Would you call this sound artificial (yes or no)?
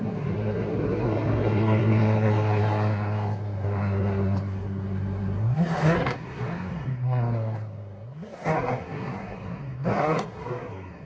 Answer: yes